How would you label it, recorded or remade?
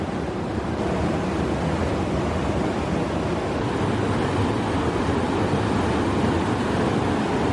recorded